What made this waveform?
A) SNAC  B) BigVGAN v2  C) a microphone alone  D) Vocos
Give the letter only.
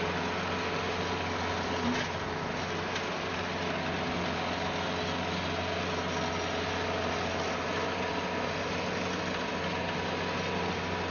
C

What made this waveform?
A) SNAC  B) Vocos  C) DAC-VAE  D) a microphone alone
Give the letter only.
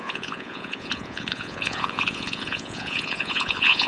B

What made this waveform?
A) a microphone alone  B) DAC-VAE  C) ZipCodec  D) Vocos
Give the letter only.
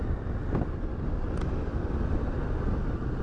A